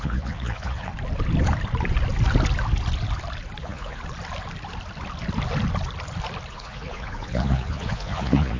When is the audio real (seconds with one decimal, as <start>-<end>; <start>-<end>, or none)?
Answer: 0.9-3.6; 4.0-6.5